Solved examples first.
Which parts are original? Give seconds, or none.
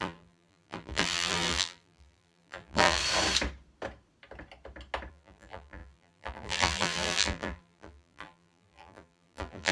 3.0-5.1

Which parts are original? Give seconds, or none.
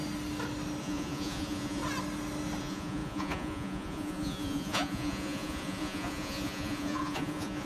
0.0-0.8; 1.8-2.6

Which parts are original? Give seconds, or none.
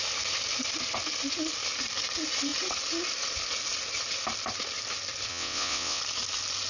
0.0-5.3; 6.0-6.7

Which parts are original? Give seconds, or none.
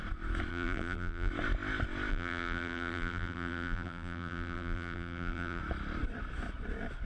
0.0-0.5; 1.3-2.1; 5.6-7.0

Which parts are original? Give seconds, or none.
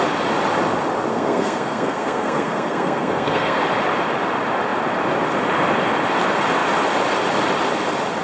0.0-1.1; 3.6-8.2